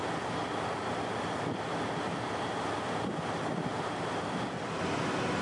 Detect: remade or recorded recorded